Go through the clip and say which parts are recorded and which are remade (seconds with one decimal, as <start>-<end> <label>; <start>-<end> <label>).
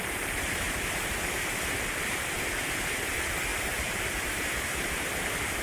0.0-3.5 recorded; 3.5-4.5 remade; 4.5-5.6 recorded